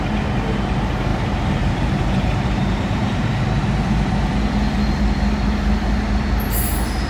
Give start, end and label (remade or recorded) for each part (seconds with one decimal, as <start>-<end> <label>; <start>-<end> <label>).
0.0-1.1 recorded; 1.1-3.4 remade; 3.4-7.1 recorded